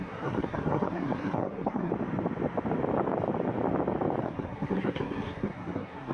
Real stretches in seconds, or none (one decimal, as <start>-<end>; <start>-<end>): 1.9-4.2